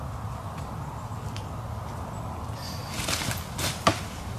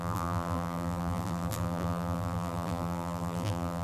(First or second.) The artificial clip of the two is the second